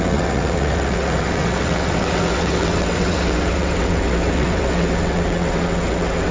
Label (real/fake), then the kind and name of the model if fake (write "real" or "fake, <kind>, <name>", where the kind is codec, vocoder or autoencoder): fake, vocoder, WaveNeXt